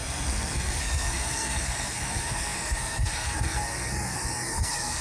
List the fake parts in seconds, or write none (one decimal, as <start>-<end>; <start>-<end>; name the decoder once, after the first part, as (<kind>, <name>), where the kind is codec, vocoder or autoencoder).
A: 0.0-5.0 (codec, SNAC)